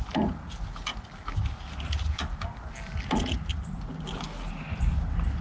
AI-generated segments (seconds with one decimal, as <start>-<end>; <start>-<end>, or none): none